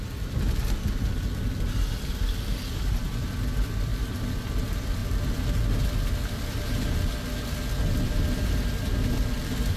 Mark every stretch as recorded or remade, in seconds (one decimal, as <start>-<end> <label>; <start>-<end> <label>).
0.0-9.8 recorded